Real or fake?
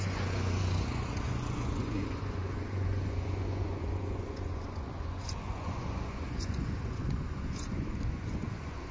fake